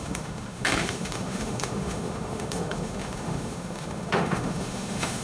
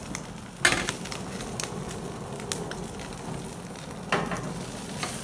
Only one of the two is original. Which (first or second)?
second